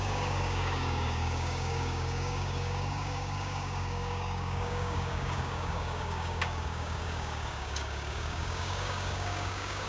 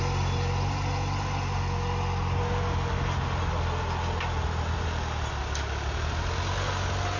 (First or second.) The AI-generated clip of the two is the first